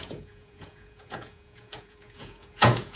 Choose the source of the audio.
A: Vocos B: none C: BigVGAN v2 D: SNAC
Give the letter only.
A